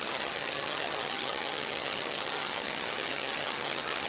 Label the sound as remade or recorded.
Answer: remade